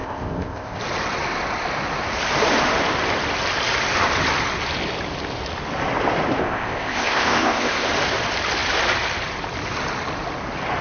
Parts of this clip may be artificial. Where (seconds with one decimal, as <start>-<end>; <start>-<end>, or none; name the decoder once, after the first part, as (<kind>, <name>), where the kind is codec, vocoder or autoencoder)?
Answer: 0.0-0.8 (codec, ZipCodec); 6.4-7.9